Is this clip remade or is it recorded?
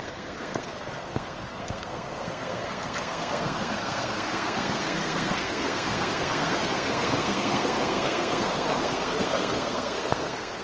remade